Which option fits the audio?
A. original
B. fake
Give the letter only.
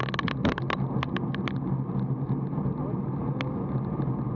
A